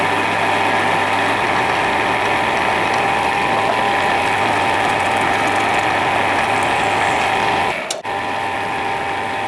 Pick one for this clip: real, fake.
real